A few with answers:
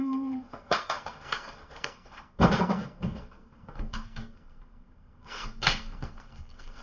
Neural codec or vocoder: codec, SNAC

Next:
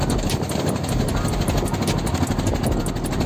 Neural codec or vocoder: none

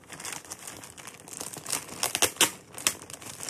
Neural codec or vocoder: none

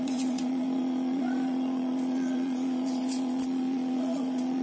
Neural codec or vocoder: vocoder, Vocos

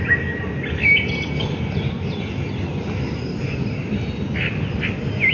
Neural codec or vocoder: none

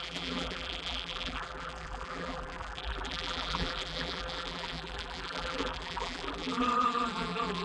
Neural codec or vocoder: vocoder, BigVGAN v2